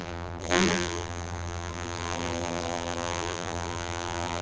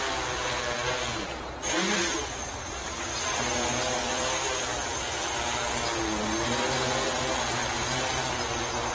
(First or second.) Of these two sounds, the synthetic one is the first